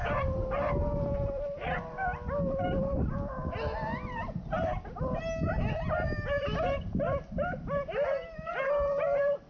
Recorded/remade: recorded